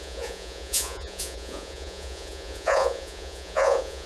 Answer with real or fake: fake